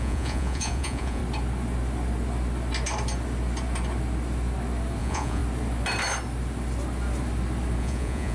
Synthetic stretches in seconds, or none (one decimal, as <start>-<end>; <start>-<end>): 0.0-1.2; 5.0-5.4; 7.8-8.3